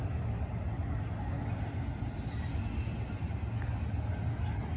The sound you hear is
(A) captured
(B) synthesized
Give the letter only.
A